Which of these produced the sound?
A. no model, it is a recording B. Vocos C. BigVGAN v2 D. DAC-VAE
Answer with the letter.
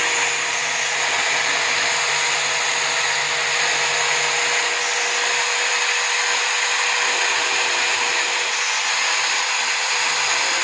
A